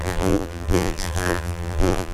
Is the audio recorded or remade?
remade